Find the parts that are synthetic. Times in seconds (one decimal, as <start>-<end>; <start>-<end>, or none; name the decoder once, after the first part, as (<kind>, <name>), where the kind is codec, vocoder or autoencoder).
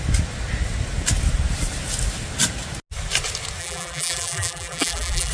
3.6-5.3 (vocoder, BigVGAN v2)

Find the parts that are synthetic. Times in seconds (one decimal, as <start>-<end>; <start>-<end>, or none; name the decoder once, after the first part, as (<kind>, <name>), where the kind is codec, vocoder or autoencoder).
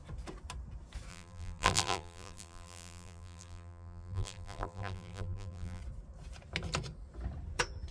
1.1-5.8 (vocoder, BigVGAN v2)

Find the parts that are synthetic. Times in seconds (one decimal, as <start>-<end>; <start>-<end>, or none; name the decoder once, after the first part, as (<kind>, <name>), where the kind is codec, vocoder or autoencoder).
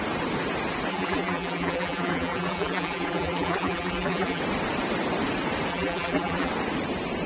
0.9-4.4 (vocoder, BigVGAN v2); 5.7-6.5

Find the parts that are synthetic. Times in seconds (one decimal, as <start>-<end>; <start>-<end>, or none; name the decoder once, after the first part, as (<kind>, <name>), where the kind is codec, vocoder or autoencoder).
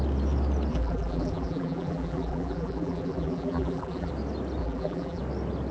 0.7-4.1 (vocoder, BigVGAN v2); 4.6-5.2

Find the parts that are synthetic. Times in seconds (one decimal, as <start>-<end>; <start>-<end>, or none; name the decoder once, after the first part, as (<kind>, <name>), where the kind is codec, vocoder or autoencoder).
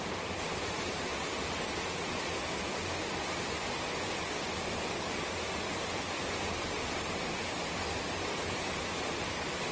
none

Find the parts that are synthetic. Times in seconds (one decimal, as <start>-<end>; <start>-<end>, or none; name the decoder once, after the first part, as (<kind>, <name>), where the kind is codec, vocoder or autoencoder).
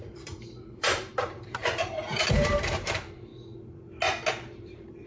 0.0-1.6 (vocoder, BigVGAN v2); 2.2-3.3; 4.3-5.1